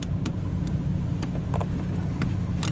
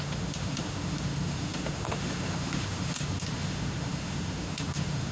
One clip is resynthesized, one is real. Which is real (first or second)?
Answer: first